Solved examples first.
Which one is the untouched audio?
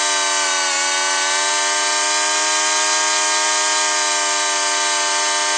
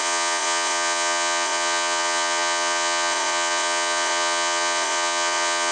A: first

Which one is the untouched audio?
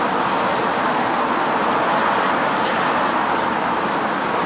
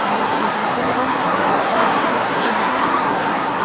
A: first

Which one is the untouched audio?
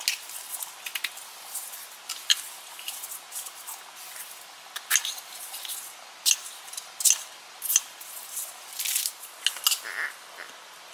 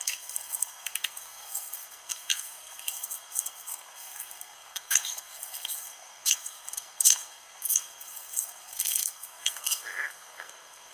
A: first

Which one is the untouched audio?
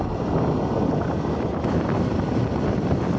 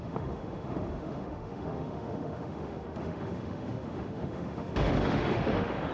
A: first